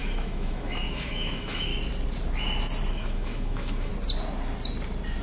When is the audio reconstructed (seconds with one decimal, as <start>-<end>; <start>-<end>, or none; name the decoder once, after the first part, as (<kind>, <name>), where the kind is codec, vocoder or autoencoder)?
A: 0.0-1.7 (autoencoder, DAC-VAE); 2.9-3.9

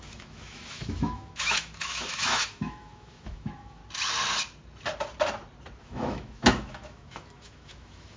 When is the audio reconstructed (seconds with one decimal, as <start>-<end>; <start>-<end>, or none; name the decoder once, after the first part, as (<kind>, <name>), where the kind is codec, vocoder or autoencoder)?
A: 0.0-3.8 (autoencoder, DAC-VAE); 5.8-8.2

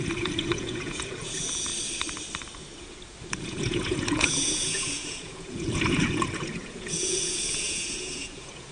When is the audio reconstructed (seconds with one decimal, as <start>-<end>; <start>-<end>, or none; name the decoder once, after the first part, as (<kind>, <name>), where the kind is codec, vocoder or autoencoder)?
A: 0.0-1.7 (vocoder, Vocos); 3.3-8.7